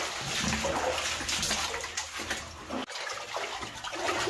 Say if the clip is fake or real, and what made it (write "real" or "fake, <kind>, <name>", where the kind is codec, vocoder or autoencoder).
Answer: real